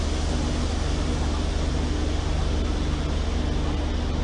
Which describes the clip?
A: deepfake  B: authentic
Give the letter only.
B